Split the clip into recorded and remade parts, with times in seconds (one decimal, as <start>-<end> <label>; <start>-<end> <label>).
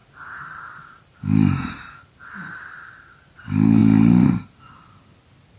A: 0.0-5.6 recorded